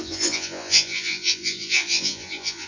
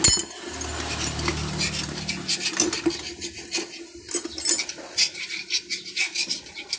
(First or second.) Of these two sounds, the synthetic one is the first